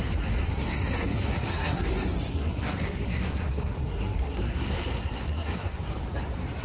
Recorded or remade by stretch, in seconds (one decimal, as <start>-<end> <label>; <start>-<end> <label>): 0.0-0.4 recorded; 0.4-1.9 remade; 1.9-2.3 recorded; 2.3-5.8 remade; 5.8-6.6 recorded